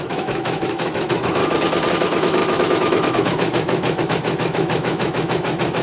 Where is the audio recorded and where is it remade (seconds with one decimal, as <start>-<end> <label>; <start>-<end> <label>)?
0.0-1.4 remade; 1.4-1.9 recorded; 1.9-5.8 remade